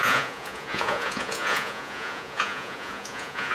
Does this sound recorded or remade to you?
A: remade